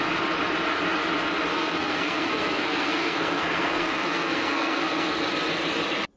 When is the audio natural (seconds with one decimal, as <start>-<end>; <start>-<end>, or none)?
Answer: 0.0-1.5; 5.2-6.2